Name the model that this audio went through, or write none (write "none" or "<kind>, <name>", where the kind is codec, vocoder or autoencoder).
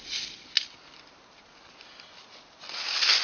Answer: none